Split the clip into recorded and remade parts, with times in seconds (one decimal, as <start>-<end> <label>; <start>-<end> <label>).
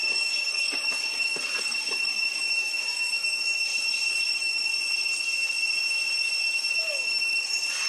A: 0.0-3.7 remade; 3.7-4.3 recorded; 4.3-4.7 remade; 4.7-6.7 recorded; 6.7-7.9 remade